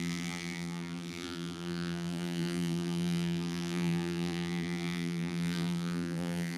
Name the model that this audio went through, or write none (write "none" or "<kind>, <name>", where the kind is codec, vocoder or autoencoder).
vocoder, BigVGAN v2